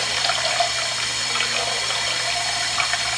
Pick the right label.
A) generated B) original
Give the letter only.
B